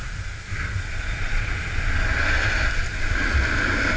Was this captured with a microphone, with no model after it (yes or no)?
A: yes